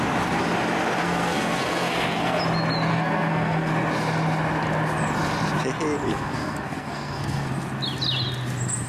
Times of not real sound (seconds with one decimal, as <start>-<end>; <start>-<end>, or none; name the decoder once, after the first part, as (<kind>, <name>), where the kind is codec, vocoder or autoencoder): 1.0-2.4 (codec, SNAC); 2.9-3.7; 6.1-7.5

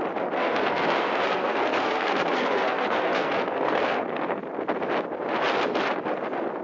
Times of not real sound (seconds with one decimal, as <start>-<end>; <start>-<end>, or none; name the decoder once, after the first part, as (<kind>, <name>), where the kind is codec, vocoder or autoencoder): 0.4-4.4 (codec, SNAC)

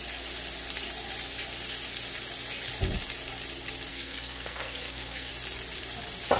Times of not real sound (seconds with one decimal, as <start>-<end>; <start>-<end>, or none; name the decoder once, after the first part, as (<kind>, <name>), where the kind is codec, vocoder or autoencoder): 3.9-5.3 (codec, SNAC)

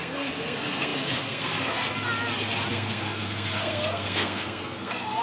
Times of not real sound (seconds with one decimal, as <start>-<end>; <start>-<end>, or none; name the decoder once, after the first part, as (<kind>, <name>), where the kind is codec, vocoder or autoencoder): 0.0-1.8 (codec, SNAC); 2.7-5.2

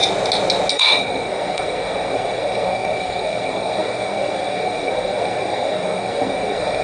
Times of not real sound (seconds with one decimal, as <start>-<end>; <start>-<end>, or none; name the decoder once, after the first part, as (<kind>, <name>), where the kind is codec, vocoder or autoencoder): 0.7-6.8 (codec, SNAC)

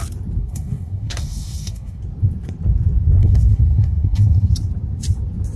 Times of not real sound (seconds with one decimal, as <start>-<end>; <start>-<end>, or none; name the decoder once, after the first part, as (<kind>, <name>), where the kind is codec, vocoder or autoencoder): 0.4-2.0 (codec, SNAC); 3.2-4.5

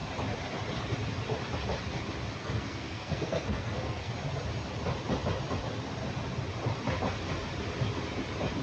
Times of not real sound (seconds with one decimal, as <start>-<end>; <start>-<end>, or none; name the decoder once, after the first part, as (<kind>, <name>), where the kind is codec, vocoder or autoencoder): 2.4-4.1 (codec, SNAC)

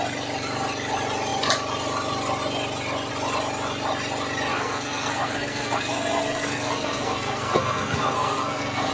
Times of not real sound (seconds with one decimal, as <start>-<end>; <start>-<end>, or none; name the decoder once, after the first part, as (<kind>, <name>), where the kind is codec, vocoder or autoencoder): 4.5-8.9 (codec, SNAC)